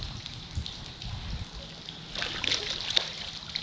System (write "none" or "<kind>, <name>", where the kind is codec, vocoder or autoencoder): none